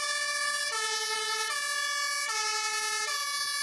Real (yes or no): yes